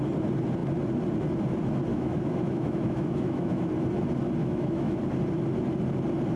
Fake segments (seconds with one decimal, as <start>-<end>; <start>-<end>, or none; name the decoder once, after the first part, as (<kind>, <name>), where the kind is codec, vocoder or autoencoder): 1.9-3.7 (autoencoder, DAC-VAE); 4.4-5.0

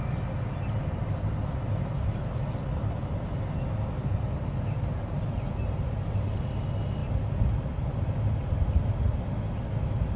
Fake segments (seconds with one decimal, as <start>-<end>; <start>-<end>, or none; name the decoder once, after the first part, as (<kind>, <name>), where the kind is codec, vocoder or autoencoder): none